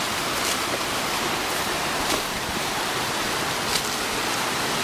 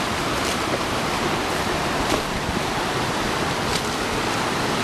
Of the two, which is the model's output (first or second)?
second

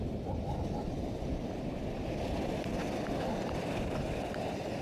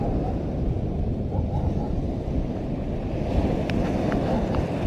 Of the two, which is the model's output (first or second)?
first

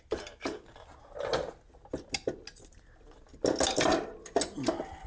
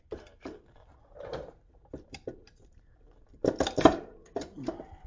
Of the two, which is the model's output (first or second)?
second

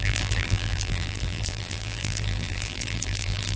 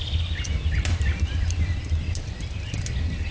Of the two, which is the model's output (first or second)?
first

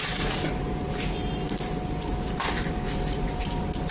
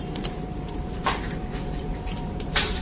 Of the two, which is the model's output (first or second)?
second